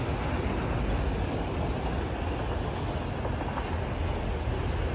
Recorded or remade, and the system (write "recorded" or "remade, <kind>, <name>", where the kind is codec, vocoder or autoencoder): recorded